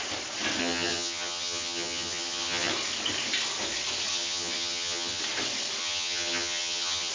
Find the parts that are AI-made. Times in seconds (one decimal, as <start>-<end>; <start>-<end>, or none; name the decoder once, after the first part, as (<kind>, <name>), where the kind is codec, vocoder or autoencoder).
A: 0.6-2.7 (vocoder, HiFi-GAN); 4.1-5.2; 5.8-7.1